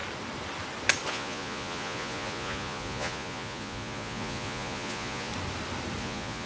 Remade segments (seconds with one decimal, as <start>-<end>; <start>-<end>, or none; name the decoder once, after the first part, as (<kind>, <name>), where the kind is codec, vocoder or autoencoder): 1.1-5.3 (vocoder, Vocos); 6.0-6.5